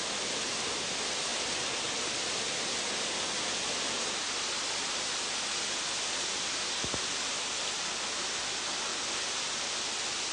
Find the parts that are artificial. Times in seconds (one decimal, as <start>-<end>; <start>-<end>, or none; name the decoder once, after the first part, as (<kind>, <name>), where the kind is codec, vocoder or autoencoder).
none